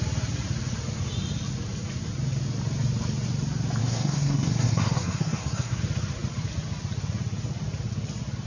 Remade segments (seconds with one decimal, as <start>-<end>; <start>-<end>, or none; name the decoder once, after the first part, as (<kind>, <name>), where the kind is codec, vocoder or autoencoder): 3.8-5.8 (codec, SNAC)